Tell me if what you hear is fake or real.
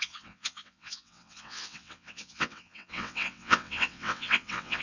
fake